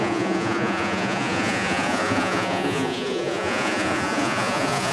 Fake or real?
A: fake